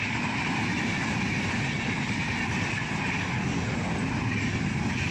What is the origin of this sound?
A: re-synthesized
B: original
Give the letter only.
B